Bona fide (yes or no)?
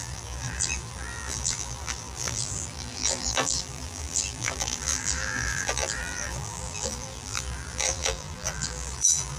no